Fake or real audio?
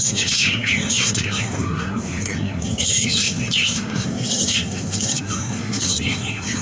fake